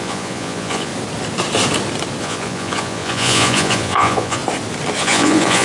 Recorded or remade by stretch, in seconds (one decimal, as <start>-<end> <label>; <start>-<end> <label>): 0.0-0.9 remade; 0.9-2.2 recorded; 2.2-4.4 remade; 4.4-5.0 recorded; 5.0-5.6 remade